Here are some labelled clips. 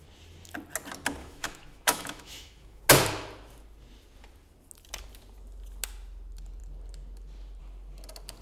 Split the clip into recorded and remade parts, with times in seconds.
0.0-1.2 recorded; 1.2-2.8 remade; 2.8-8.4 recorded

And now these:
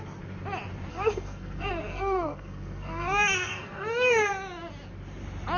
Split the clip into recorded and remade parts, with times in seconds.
0.0-0.9 recorded; 0.9-4.3 remade; 4.3-5.6 recorded

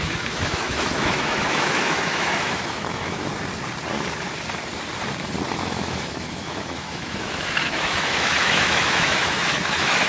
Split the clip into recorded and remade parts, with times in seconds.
0.0-3.3 remade; 3.3-5.5 recorded; 5.5-10.1 remade

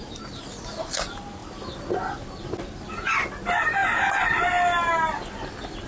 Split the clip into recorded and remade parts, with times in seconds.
0.0-5.9 recorded

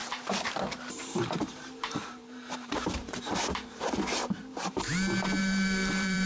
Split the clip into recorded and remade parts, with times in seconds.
0.0-3.8 remade; 3.8-5.4 recorded; 5.4-6.3 remade